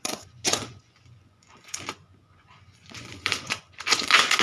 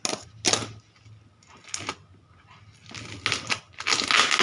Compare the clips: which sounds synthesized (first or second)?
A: first